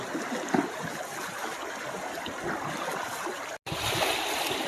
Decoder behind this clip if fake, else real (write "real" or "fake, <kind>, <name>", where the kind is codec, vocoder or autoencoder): real